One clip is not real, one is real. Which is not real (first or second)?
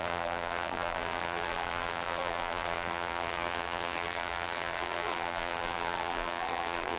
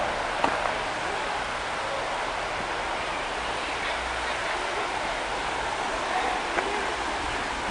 first